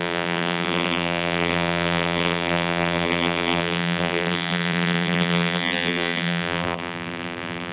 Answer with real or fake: fake